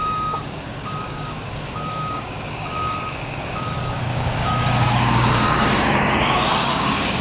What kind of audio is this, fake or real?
fake